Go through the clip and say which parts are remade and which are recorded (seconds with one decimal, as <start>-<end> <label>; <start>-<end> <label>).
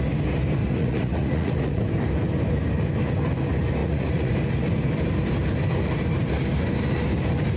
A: 0.0-0.6 recorded; 0.6-1.8 remade; 1.8-3.8 recorded; 3.8-4.3 remade; 4.3-7.6 recorded